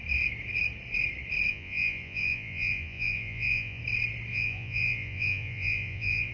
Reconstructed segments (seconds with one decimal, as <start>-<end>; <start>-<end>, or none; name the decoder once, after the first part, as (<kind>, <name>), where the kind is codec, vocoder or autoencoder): 1.5-3.8 (vocoder, Vocos); 4.3-6.3